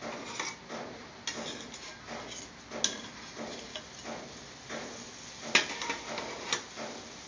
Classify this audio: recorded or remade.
recorded